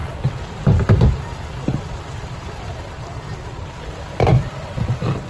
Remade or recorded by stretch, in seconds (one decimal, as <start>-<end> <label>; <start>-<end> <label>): 0.0-3.2 remade; 3.2-4.3 recorded; 4.3-4.8 remade; 4.8-5.3 recorded